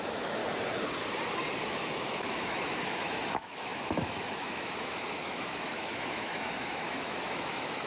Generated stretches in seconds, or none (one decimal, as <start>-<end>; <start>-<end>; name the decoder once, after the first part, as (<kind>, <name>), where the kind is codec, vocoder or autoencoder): 0.0-0.4 (autoencoder, DAC-VAE); 1.6-7.9